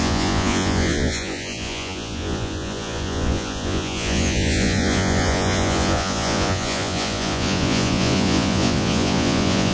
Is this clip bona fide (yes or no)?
no